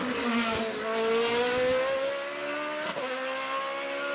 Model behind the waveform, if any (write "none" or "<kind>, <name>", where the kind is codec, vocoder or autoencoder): none